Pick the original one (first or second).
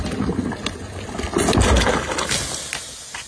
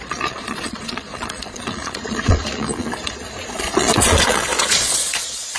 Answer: first